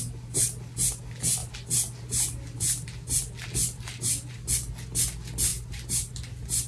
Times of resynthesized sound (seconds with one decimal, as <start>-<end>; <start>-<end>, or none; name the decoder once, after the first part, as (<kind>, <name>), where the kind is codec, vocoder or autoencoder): none